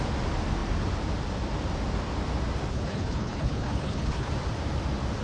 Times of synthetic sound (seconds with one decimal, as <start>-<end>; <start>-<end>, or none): 2.7-4.3